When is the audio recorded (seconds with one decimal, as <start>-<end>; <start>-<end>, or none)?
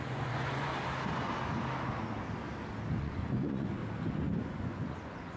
0.7-3.0; 3.8-4.4